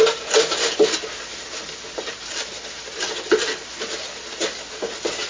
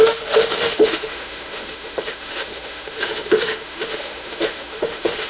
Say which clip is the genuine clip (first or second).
first